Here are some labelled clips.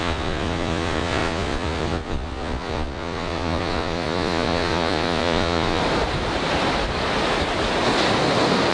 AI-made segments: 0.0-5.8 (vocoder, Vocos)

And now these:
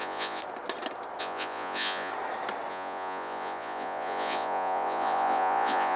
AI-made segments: 0.0-0.4 (vocoder, Vocos); 1.2-2.1; 2.7-6.0

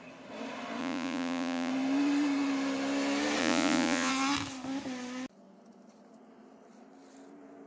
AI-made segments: 0.8-1.7 (vocoder, Vocos); 3.4-4.1

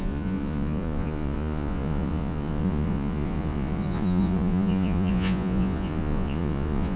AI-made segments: 0.0-7.0 (vocoder, Vocos)

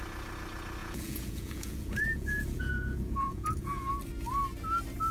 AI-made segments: 0.8-3.9 (vocoder, Vocos)

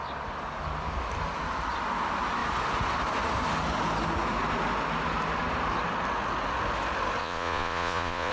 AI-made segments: 7.2-8.3 (vocoder, Vocos)

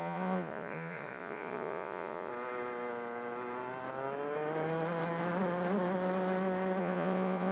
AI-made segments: 0.0-2.3 (vocoder, Vocos); 6.8-7.5

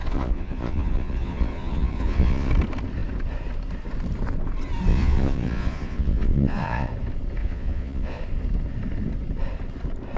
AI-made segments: 0.0-2.5 (vocoder, Vocos); 4.9-6.9; 7.4-8.2